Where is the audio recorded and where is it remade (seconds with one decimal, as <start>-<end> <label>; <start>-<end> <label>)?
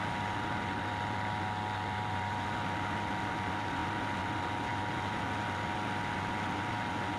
0.0-7.2 recorded